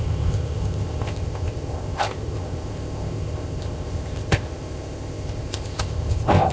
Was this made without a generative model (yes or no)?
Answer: no